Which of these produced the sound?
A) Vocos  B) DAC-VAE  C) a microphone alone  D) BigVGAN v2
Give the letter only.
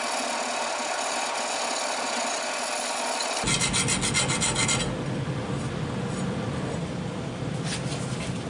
C